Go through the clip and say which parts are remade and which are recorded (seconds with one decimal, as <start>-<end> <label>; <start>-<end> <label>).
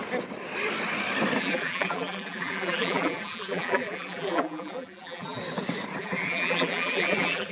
0.0-1.4 recorded; 1.4-5.4 remade; 5.4-6.0 recorded; 6.0-7.5 remade